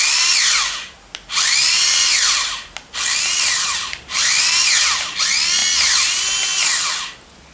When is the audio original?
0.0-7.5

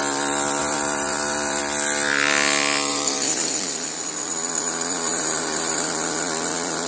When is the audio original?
0.0-0.6; 1.6-2.9; 3.5-5.1; 5.7-6.9